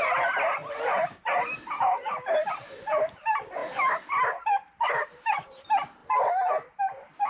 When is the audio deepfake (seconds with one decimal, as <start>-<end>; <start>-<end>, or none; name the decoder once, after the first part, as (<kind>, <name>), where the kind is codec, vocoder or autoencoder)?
3.6-5.2 (vocoder, BigVGAN v2)